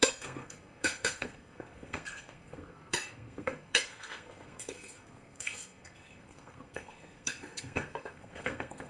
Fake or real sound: fake